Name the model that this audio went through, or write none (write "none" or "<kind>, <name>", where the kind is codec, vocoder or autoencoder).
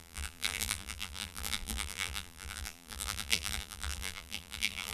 vocoder, BigVGAN v2